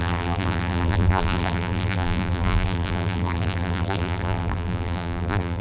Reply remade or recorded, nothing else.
remade